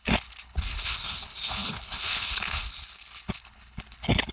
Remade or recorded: remade